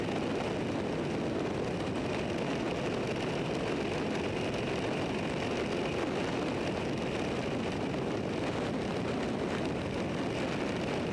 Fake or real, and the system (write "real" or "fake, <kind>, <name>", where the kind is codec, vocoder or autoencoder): real